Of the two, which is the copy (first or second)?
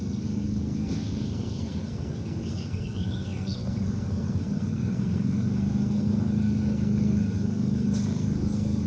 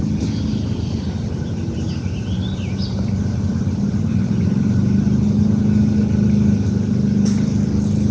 first